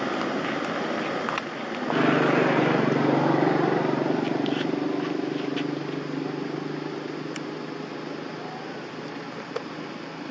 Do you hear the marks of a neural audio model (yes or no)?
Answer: no